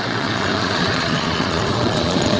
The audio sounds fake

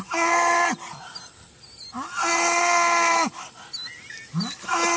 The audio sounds real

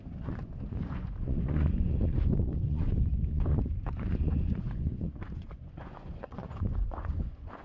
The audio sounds fake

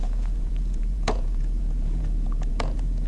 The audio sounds fake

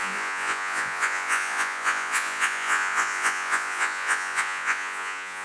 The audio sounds fake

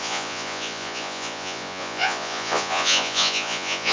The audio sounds fake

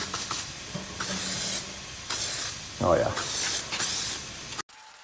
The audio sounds real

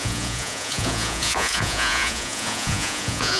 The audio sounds fake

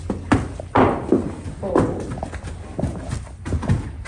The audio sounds real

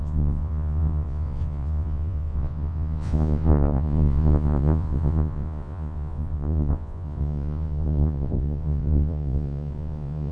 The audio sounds fake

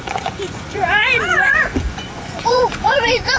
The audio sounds fake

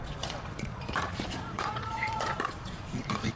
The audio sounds fake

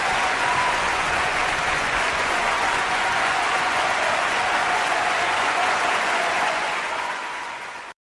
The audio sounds fake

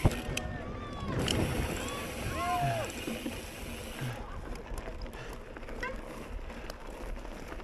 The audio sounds real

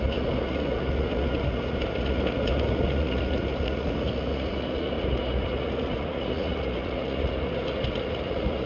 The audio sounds fake